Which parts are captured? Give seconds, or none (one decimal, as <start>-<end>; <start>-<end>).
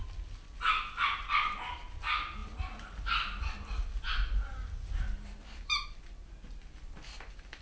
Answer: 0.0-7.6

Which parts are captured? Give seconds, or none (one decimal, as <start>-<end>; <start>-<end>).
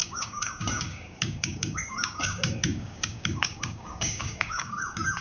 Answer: none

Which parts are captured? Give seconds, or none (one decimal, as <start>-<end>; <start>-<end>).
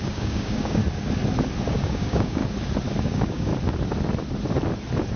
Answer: 0.8-1.7; 2.4-3.0; 3.5-5.2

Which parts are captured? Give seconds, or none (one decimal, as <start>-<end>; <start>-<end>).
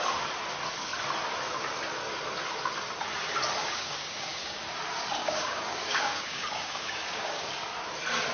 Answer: 0.0-3.6; 4.6-5.2; 7.5-8.3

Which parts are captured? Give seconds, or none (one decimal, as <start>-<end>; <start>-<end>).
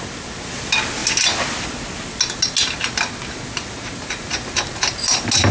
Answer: 0.0-5.5